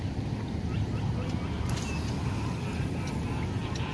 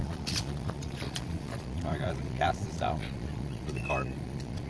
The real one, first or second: first